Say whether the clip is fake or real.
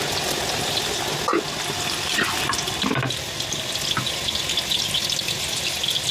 real